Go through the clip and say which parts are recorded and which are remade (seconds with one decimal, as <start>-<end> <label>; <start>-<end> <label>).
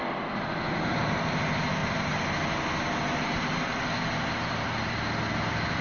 0.0-5.8 recorded